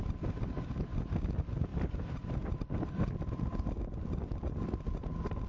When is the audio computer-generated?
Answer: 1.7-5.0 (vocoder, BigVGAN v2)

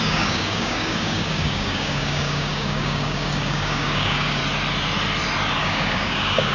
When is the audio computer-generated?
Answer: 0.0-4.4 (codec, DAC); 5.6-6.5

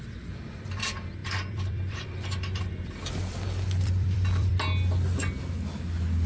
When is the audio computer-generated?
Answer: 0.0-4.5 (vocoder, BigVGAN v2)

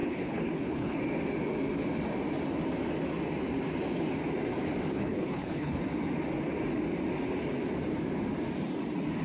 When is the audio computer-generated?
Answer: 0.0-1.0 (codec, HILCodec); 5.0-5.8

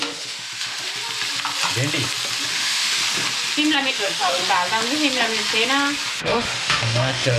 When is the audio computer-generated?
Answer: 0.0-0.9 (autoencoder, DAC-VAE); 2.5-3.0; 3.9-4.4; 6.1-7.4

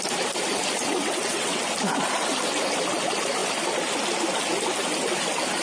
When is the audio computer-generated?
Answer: 1.0-1.6 (vocoder, WaveNeXt)

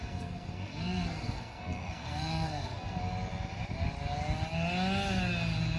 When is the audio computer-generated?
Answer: 0.0-3.0 (codec, SNAC)